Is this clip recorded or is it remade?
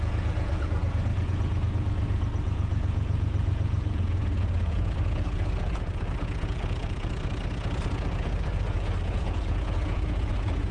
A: remade